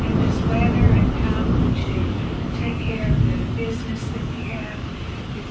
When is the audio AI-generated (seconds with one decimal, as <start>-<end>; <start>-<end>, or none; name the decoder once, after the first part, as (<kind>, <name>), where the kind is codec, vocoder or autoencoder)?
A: 1.8-2.9 (codec, DAC); 4.0-4.9